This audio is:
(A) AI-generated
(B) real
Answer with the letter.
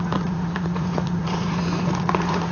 A